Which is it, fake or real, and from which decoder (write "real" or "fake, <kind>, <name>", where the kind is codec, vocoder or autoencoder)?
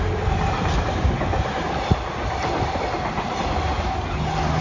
real